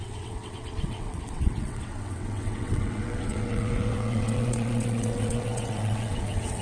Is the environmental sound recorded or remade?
remade